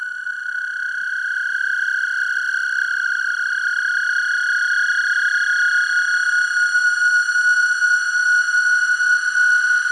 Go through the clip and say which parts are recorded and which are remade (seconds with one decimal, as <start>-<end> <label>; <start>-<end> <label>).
0.0-9.9 recorded